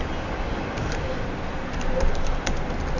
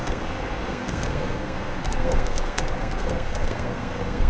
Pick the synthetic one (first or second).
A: second